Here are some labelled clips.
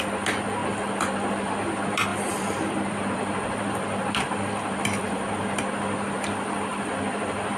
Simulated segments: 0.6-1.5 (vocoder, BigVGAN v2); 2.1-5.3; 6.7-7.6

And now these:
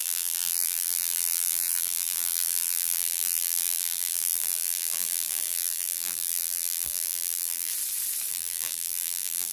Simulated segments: 0.0-7.7 (vocoder, BigVGAN v2); 8.3-9.5

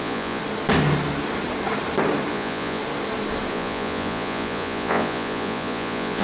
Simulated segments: 0.0-0.4 (vocoder, Vocos); 2.3-2.8; 3.5-6.2

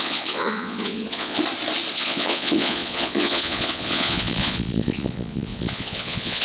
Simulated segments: 0.0-1.4 (vocoder, Vocos); 1.9-6.4

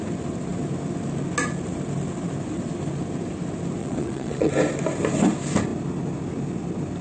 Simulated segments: 3.8-4.5 (vocoder, Vocos)

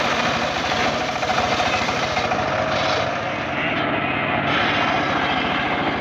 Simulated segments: none

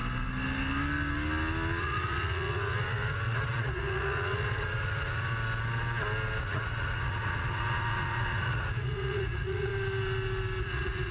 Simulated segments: 1.8-5.3 (vocoder, Vocos); 6.4-9.7; 10.6-11.1